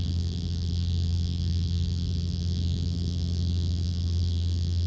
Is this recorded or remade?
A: remade